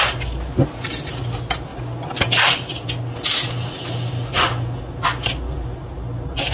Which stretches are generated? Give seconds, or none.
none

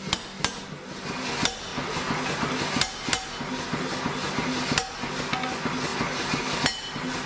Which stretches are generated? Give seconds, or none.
none